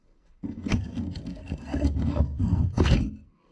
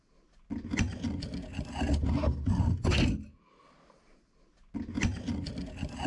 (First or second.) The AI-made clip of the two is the first